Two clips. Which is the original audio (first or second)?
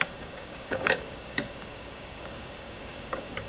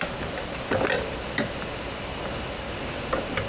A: second